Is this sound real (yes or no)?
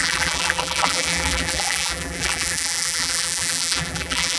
no